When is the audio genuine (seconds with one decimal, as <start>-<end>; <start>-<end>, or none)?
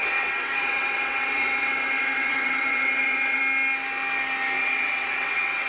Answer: 3.4-4.6